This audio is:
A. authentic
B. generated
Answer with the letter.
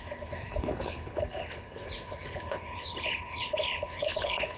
B